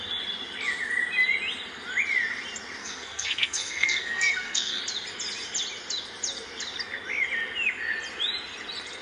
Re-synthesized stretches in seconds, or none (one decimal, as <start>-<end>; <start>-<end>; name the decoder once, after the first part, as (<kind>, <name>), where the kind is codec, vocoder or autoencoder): 2.8-4.8 (codec, SNAC)